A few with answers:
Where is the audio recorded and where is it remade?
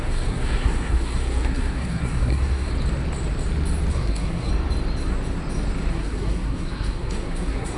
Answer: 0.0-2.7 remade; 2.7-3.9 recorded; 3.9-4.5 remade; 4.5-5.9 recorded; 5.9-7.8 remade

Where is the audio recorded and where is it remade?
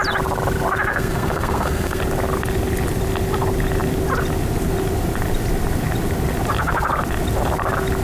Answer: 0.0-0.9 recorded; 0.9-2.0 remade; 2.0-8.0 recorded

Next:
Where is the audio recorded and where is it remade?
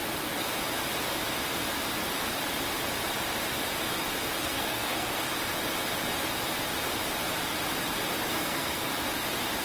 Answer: 0.0-4.4 recorded; 4.4-5.3 remade; 5.3-8.3 recorded; 8.3-8.9 remade; 8.9-9.6 recorded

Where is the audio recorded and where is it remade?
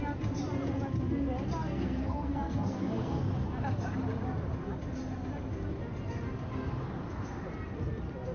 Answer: 0.0-1.6 recorded; 1.6-3.2 remade; 3.2-8.3 recorded